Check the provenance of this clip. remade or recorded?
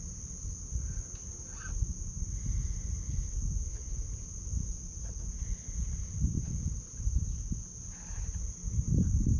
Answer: recorded